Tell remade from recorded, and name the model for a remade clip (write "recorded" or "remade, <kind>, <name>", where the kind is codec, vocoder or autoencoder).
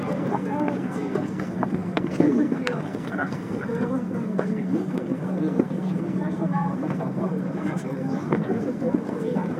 remade, codec, SNAC